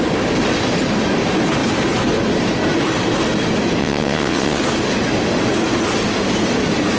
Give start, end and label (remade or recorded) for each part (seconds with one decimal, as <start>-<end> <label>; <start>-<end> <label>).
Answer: 0.0-3.8 recorded; 3.8-4.6 remade; 4.6-7.0 recorded